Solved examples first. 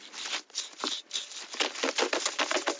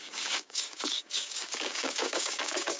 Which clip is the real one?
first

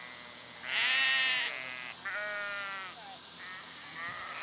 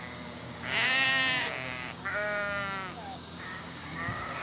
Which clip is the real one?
first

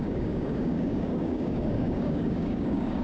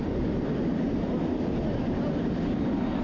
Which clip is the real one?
second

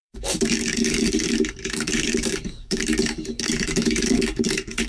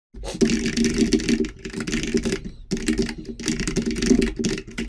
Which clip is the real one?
second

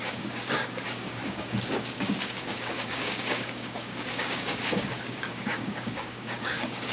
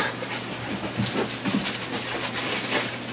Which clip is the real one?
second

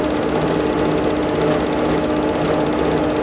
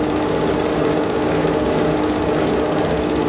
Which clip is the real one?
first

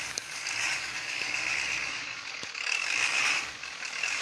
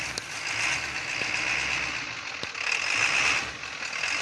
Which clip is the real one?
second